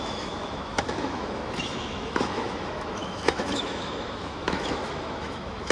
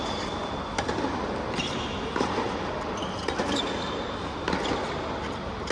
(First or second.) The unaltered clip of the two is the second